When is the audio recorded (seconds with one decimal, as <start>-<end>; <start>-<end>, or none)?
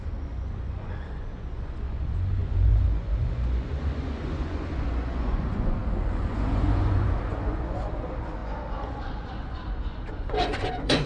none